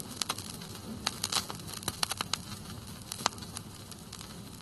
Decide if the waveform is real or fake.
real